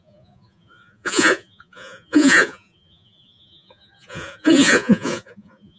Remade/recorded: remade